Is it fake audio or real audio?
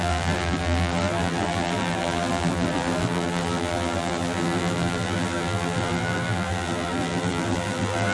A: fake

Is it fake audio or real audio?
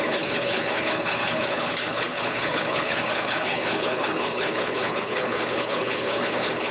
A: fake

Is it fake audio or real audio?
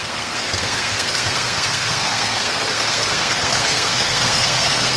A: fake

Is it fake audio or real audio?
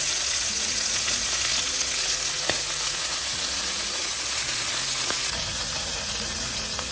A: fake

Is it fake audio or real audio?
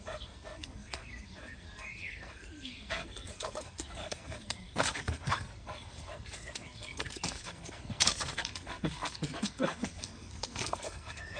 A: fake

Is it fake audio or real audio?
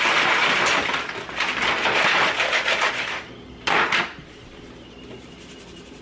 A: real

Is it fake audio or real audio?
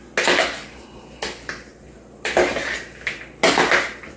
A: real